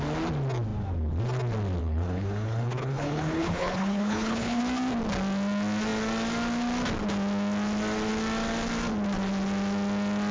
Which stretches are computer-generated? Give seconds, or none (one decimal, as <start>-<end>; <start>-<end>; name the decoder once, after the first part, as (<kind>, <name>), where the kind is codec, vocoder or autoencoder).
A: 1.8-4.6 (codec, HILCodec)